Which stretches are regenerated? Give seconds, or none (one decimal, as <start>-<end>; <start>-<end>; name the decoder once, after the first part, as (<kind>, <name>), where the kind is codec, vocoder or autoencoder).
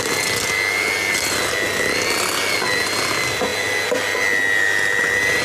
none